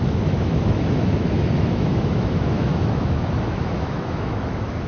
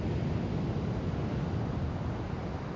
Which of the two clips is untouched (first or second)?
second